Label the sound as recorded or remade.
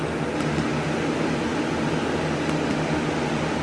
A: recorded